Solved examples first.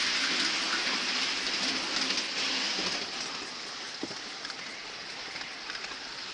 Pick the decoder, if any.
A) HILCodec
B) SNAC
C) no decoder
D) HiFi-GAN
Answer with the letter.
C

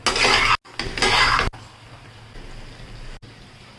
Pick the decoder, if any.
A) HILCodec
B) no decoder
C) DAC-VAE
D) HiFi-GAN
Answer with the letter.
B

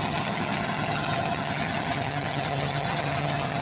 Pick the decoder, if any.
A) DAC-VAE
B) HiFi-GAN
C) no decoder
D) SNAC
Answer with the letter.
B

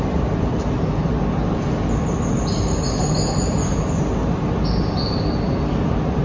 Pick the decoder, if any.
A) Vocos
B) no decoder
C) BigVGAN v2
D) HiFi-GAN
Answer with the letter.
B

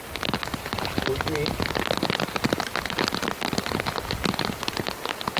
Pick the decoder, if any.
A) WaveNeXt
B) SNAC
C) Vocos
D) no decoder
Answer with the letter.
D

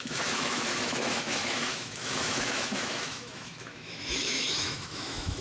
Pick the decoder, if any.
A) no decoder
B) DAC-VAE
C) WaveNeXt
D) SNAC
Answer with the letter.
B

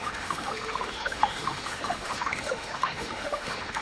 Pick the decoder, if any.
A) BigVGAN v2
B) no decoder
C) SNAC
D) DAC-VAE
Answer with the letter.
D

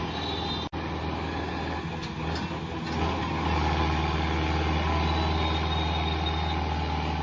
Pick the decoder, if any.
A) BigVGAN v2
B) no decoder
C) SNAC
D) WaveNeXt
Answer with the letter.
B